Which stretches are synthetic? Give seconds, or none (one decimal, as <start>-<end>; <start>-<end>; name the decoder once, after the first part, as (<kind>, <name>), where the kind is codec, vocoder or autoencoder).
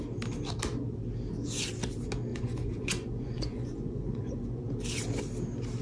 2.3-4.6 (vocoder, Vocos)